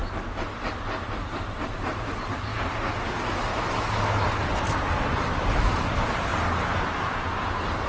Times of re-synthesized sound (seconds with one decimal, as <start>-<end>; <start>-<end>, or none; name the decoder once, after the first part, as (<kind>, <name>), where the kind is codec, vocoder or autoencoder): 1.3-2.5 (vocoder, BigVGAN v2); 5.8-6.3; 7.4-7.9